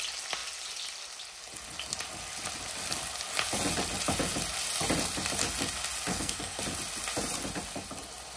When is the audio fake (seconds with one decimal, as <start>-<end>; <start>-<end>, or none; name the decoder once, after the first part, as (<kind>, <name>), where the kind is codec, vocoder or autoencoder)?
6.1-6.6 (codec, SNAC)